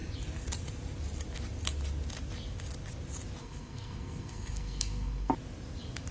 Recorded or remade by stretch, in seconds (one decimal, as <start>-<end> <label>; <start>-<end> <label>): 0.0-3.4 recorded; 3.4-5.3 remade; 5.3-6.1 recorded